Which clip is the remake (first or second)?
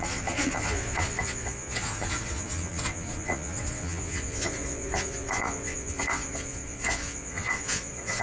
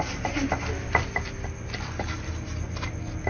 first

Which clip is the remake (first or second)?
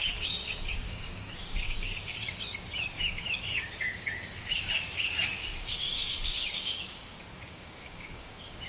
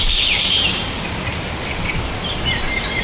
first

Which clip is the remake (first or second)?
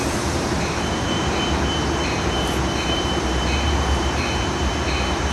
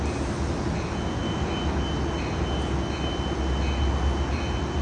first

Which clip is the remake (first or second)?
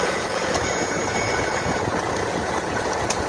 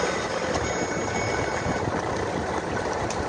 first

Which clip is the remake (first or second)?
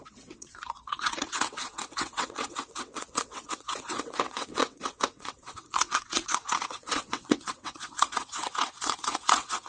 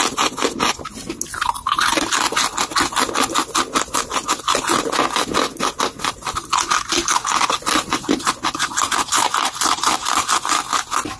first